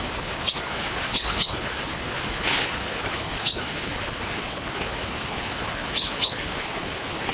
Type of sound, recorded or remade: remade